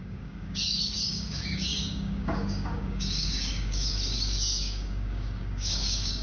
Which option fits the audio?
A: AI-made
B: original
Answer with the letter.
A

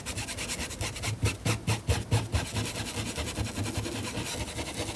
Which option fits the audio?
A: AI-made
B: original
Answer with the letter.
B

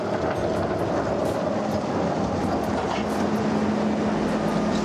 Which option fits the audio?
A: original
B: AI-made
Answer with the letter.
A